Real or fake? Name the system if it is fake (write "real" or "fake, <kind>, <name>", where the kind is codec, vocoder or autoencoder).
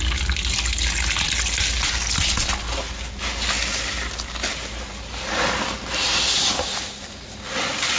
real